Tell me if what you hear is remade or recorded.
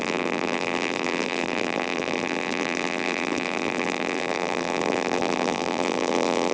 remade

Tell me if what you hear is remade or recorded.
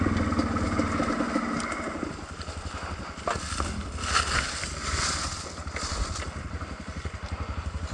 recorded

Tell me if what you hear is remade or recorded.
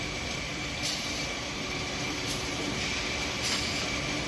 remade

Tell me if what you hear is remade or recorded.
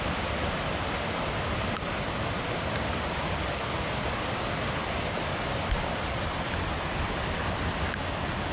recorded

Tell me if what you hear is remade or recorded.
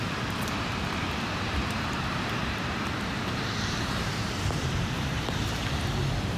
remade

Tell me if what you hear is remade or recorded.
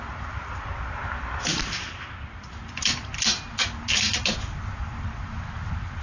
remade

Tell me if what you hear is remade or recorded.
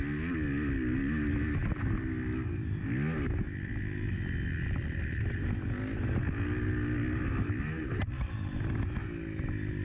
recorded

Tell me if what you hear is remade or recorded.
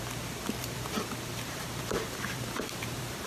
remade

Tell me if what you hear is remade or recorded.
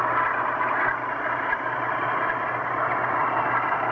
recorded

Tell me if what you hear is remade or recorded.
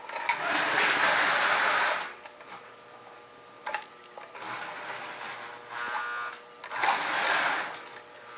recorded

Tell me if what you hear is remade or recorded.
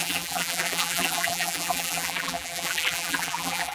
remade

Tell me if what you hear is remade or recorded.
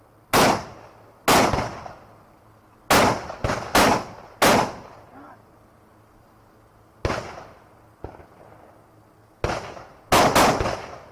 recorded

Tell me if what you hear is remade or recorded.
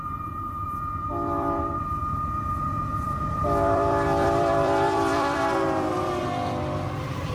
remade